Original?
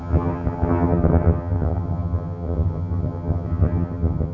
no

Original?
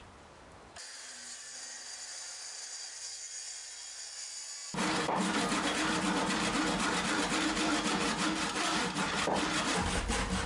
yes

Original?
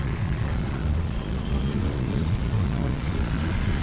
no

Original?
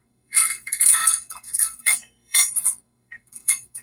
no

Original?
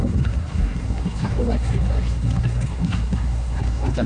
no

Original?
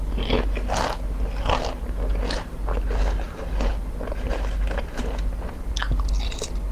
yes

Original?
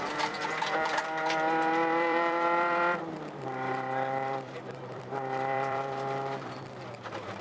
no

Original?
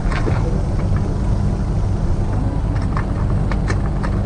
yes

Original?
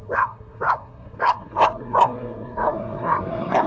no